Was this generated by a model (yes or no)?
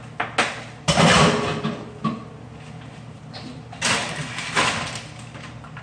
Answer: no